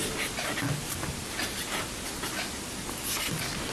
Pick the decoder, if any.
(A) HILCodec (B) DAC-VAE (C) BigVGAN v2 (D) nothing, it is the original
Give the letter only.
D